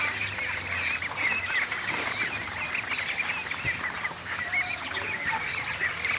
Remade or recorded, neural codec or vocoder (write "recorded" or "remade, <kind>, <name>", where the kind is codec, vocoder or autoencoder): recorded